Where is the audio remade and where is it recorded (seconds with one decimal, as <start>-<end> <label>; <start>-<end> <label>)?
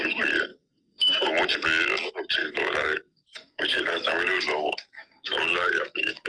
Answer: 0.0-0.5 recorded; 0.5-1.3 remade; 1.3-2.4 recorded; 2.4-6.3 remade